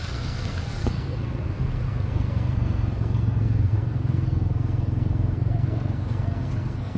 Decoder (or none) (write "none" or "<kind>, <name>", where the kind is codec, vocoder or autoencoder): codec, SNAC